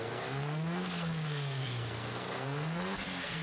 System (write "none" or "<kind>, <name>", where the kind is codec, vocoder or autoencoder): codec, SNAC